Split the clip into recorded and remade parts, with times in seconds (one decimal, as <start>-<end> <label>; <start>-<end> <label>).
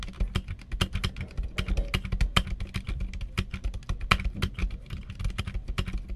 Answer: 0.0-6.2 recorded